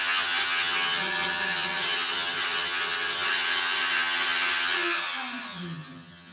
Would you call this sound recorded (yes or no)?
no